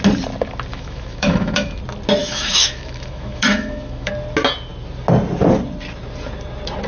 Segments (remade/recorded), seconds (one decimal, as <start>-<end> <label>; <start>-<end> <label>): 0.0-0.7 recorded; 0.7-1.8 remade; 1.8-2.2 recorded; 2.2-4.1 remade; 4.1-6.9 recorded